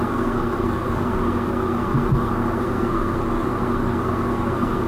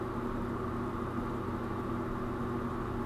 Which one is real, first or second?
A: second